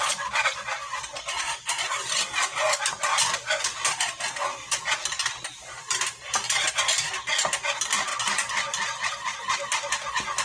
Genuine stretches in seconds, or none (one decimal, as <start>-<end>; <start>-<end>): 0.0-10.4